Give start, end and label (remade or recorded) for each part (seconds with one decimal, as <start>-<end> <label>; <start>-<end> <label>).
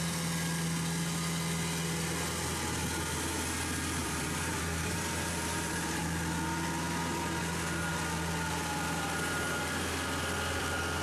0.0-4.0 recorded; 4.0-6.0 remade; 6.0-11.0 recorded